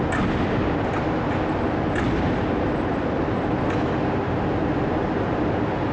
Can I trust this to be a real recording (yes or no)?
yes